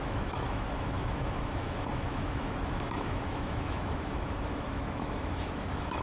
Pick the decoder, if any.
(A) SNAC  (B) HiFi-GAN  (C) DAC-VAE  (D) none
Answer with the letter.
C